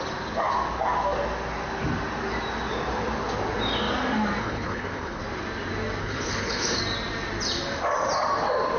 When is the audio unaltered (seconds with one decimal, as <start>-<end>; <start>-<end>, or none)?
0.0-4.4; 5.2-6.0; 6.8-8.8

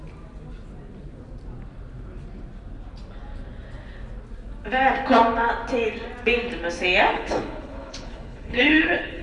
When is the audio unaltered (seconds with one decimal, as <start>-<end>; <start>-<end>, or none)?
0.0-7.1

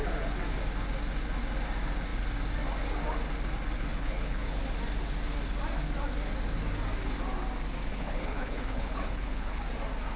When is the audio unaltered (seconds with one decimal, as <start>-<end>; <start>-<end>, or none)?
0.0-3.9; 4.6-7.9; 9.6-10.2

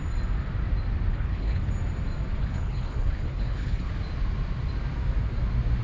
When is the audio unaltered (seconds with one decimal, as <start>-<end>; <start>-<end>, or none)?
0.0-1.1; 1.7-2.4; 3.9-5.8

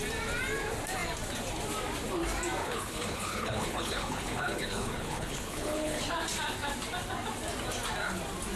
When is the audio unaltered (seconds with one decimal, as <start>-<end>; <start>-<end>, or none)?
0.0-2.6; 6.0-8.6